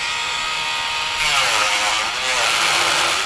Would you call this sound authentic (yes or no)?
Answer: yes